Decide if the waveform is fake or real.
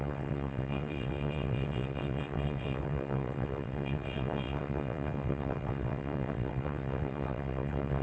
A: fake